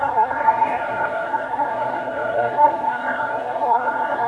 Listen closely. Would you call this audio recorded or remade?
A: remade